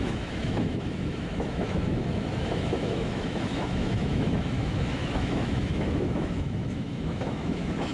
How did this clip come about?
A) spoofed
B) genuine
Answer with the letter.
A